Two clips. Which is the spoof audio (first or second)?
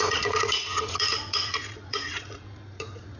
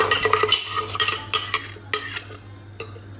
first